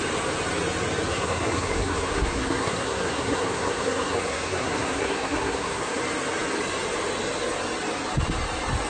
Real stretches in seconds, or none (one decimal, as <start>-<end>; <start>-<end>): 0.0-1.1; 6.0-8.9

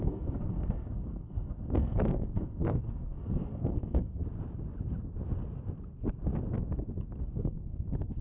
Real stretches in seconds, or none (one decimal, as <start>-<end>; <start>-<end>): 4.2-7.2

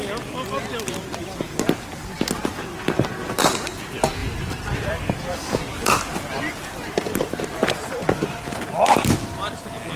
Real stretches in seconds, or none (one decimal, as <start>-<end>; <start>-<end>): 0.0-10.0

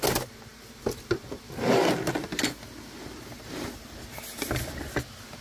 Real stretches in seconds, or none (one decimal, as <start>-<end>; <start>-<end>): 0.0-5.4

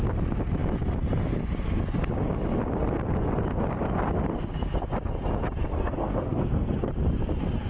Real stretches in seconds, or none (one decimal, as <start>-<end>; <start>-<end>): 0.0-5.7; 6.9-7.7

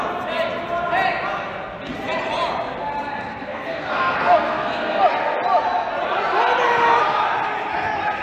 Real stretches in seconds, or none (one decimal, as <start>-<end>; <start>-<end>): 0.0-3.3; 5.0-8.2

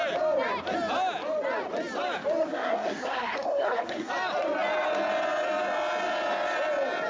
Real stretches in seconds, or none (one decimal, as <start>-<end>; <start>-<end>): 0.0-2.4; 4.1-7.1

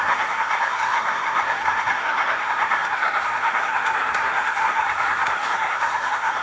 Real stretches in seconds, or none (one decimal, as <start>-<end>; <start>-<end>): none